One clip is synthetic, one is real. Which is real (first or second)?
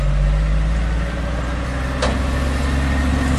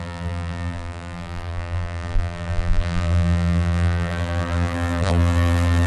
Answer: first